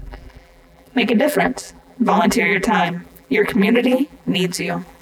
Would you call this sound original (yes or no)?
no